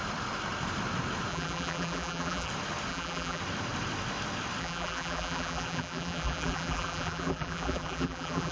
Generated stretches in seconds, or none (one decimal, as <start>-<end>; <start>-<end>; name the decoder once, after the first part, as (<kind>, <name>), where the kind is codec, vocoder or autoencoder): 1.3-2.5 (vocoder, BigVGAN v2); 2.9-3.4; 4.6-8.5